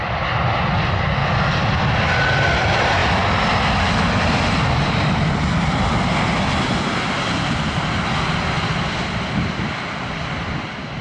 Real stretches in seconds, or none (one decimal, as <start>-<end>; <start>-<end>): 0.0-11.0